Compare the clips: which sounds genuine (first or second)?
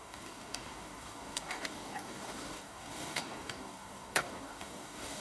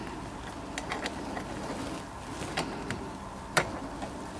second